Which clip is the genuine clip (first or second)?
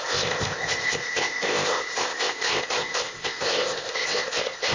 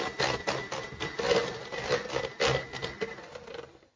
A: second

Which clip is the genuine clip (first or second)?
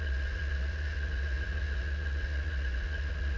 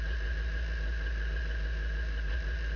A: second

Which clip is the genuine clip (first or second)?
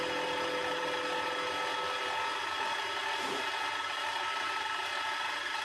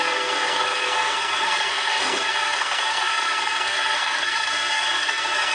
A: first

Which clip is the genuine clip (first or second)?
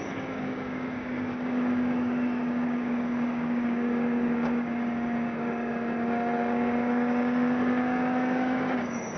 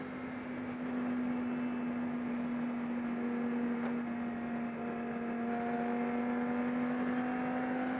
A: second